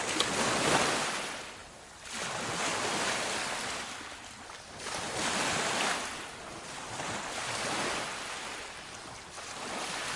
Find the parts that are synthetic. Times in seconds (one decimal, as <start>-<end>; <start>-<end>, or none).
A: none